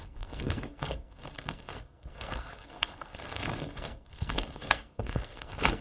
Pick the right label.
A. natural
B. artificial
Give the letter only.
B